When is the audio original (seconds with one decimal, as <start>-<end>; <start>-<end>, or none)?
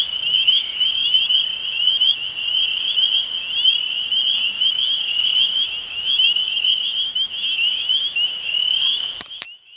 1.2-4.6